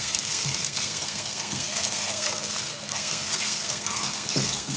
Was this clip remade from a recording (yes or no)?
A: yes